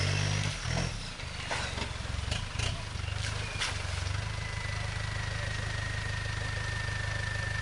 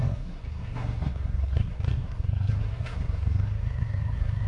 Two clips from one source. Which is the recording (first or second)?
first